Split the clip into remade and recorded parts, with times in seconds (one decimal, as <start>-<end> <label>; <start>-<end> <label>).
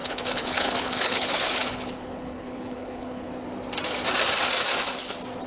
0.0-3.3 remade; 3.3-5.5 recorded